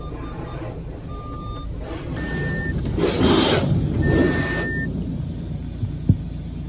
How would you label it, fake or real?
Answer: real